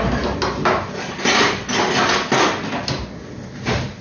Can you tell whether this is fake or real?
real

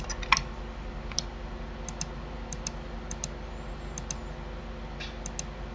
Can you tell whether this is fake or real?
real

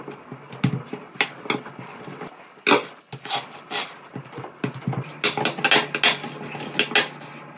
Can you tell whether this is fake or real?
real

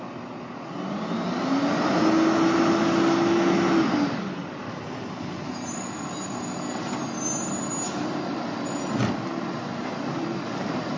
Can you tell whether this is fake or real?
real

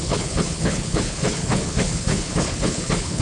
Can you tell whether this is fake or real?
fake